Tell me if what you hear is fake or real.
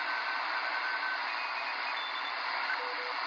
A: real